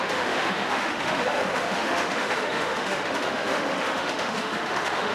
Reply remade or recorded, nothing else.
remade